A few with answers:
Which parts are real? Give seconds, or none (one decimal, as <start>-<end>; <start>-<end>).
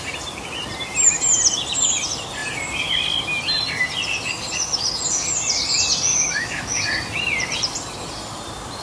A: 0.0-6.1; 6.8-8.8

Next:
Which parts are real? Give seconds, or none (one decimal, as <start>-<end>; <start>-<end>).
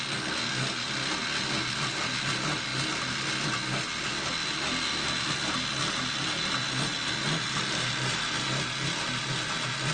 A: 0.0-9.9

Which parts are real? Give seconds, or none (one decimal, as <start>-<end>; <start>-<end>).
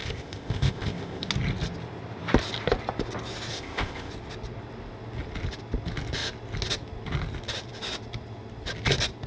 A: 1.3-3.5; 4.1-9.3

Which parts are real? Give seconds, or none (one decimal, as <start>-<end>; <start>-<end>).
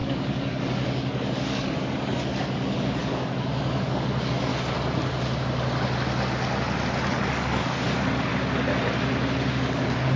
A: 4.5-7.1; 8.3-9.5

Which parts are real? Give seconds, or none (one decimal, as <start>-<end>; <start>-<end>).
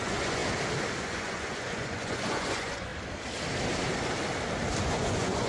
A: 0.4-1.0; 2.9-4.8